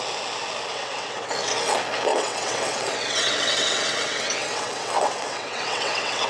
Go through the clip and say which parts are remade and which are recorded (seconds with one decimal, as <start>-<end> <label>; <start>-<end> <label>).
0.0-0.7 recorded; 0.7-1.3 remade; 1.3-2.1 recorded; 2.1-6.3 remade